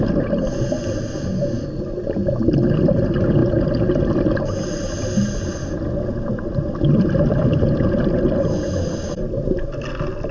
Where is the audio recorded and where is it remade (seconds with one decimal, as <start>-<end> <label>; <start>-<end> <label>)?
0.0-10.3 recorded